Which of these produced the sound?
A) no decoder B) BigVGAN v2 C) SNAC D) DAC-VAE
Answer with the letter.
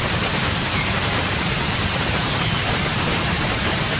B